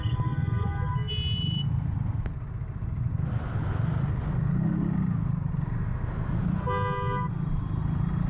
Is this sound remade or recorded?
recorded